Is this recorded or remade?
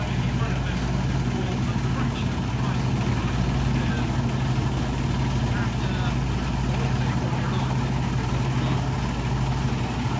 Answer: recorded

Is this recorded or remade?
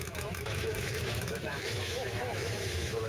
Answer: remade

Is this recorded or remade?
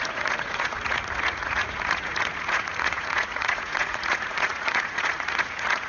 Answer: remade